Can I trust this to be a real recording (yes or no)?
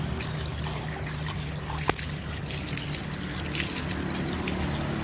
yes